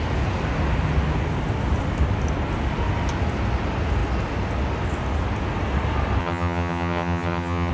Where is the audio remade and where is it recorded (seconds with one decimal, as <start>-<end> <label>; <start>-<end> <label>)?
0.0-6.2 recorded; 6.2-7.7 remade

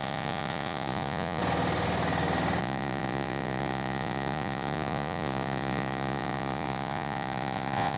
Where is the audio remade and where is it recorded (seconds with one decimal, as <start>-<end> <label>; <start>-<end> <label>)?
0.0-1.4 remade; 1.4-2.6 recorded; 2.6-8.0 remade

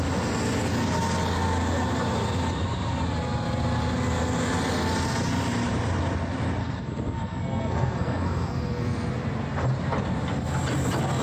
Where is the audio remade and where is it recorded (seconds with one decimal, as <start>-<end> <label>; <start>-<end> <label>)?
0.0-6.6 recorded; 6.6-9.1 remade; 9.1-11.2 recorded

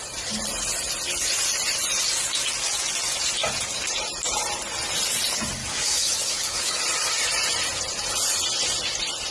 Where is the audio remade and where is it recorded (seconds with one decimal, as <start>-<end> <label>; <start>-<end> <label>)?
0.0-5.6 recorded; 5.6-6.8 remade; 6.8-9.3 recorded

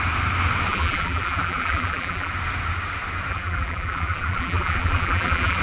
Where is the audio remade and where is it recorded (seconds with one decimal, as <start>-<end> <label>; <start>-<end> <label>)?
0.0-0.7 recorded; 0.7-2.3 remade; 2.3-3.3 recorded; 3.3-5.6 remade

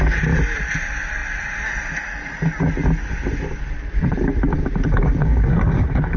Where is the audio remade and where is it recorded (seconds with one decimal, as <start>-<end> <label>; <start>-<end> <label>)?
0.0-6.2 recorded

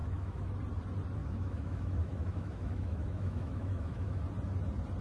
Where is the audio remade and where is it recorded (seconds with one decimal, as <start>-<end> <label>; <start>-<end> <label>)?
0.0-0.6 remade; 0.6-1.2 recorded; 1.2-4.2 remade; 4.2-5.0 recorded